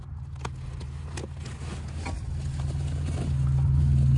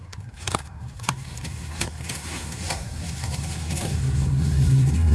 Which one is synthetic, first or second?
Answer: second